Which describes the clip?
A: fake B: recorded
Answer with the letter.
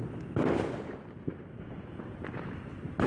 B